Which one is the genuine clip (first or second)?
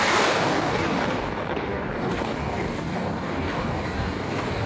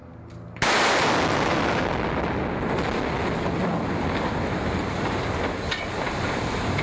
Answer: second